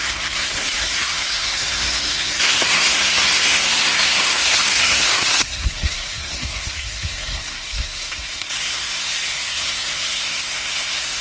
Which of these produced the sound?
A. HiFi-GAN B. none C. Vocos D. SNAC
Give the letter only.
D